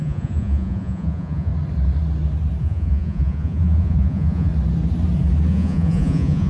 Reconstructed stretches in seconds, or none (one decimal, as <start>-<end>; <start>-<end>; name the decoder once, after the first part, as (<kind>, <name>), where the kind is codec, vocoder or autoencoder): 0.0-1.5 (vocoder, Vocos); 2.6-4.5; 5.5-6.5